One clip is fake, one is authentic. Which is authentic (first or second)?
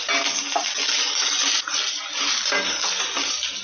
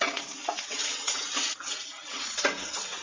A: first